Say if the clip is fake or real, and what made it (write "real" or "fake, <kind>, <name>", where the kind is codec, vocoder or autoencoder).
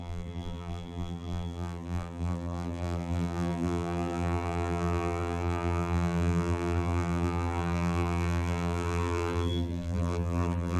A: fake, vocoder, BigVGAN v2